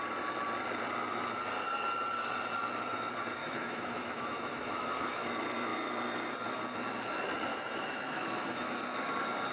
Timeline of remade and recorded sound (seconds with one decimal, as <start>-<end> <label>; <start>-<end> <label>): 0.0-3.4 recorded; 3.4-5.3 remade; 5.3-7.5 recorded; 7.5-8.7 remade; 8.7-9.5 recorded